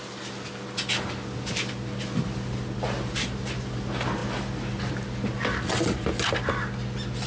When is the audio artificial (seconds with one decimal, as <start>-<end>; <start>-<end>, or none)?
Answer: none